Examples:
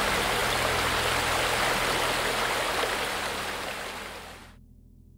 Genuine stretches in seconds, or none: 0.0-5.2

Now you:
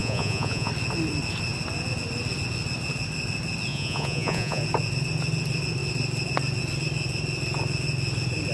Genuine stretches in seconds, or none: 0.7-3.7; 4.6-8.5

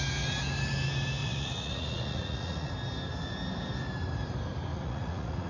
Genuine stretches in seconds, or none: 0.0-1.2; 2.7-4.7

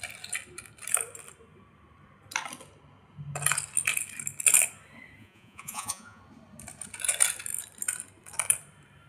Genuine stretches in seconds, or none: 0.0-5.2; 6.2-9.1

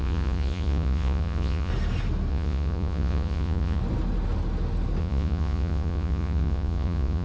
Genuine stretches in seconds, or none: 1.7-2.3; 3.8-5.0